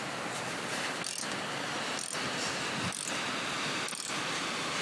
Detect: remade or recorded recorded